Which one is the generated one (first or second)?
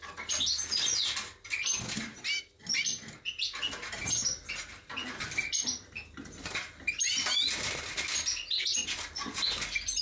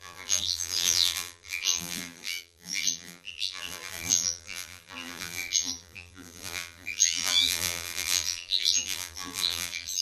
second